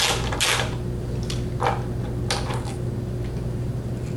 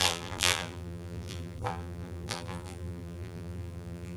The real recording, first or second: first